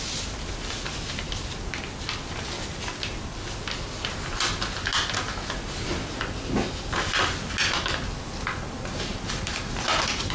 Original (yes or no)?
yes